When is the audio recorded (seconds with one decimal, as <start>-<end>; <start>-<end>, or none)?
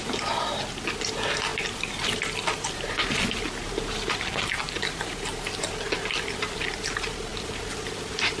0.0-8.4